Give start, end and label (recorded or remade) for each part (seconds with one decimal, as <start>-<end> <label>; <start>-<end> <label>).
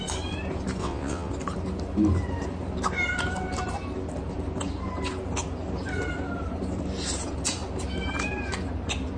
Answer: 0.0-0.8 recorded; 0.8-1.3 remade; 1.3-9.2 recorded